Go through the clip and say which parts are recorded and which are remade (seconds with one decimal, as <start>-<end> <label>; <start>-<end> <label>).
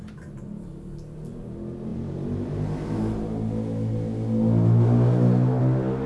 0.0-6.1 recorded